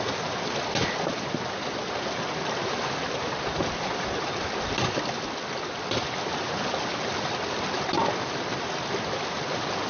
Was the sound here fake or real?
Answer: real